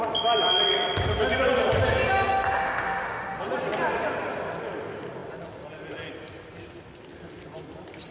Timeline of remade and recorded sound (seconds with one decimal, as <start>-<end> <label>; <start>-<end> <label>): 0.0-2.6 recorded; 2.6-3.4 remade; 3.4-8.1 recorded

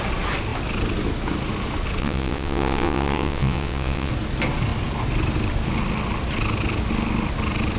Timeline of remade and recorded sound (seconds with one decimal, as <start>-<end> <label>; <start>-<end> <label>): 0.0-2.0 recorded; 2.0-4.1 remade; 4.1-7.8 recorded

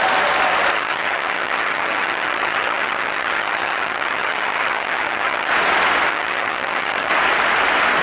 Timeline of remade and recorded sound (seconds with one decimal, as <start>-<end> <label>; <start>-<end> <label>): 0.0-0.7 recorded; 0.7-5.5 remade; 5.5-6.1 recorded; 6.1-7.1 remade; 7.1-8.0 recorded

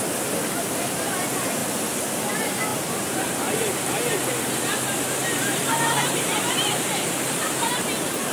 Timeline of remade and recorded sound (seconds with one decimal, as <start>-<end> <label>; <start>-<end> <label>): 0.0-2.7 recorded; 2.7-4.2 remade; 4.2-5.2 recorded; 5.2-7.7 remade; 7.7-8.3 recorded

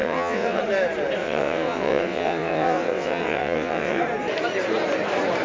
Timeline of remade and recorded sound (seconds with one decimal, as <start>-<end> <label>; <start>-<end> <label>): 0.0-0.6 remade; 0.6-1.2 recorded; 1.2-4.0 remade; 4.0-5.4 recorded